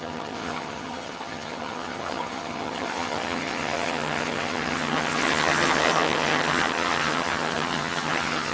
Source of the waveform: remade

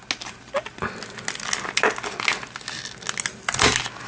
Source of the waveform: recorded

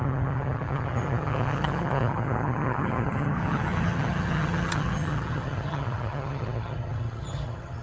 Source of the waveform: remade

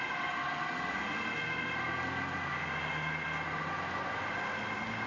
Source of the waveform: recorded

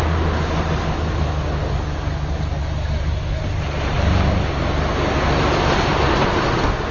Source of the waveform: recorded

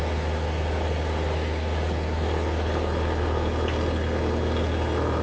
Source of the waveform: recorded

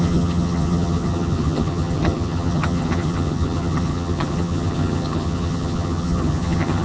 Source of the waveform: remade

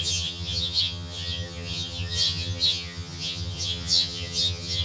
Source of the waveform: remade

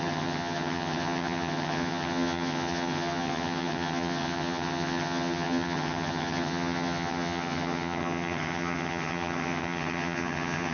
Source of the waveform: remade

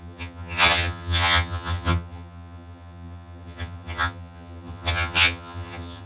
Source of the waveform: remade